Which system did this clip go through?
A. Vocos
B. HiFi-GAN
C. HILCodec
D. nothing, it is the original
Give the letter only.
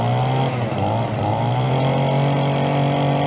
D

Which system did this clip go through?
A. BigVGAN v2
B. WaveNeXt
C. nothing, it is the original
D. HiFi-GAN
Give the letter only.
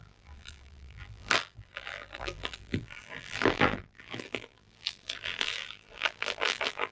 A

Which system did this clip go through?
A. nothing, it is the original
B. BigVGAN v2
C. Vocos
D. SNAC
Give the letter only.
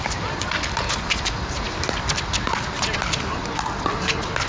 A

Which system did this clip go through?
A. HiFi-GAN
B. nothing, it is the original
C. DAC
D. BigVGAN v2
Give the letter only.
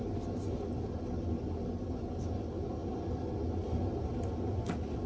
B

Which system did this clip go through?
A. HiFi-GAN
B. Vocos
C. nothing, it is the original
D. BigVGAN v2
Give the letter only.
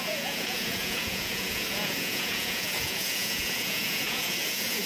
B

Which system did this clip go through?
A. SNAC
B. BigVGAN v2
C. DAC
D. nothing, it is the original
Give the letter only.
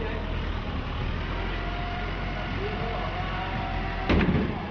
B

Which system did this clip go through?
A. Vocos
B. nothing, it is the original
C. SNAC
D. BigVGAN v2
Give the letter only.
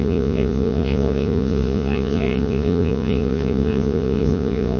A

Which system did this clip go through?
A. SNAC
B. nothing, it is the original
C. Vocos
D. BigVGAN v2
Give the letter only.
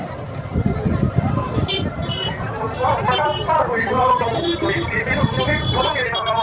B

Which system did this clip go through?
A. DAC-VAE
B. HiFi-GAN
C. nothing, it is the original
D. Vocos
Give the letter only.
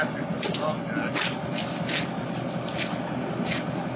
C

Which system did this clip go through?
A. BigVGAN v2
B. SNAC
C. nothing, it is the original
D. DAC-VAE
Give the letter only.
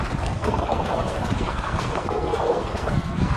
B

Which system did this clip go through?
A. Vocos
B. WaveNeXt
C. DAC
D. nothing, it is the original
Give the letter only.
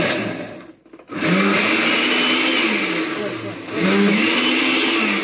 D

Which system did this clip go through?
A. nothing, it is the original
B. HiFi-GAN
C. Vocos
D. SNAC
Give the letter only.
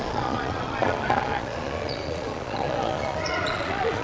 C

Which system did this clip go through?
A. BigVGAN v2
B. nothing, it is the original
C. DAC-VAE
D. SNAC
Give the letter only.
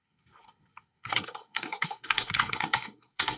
D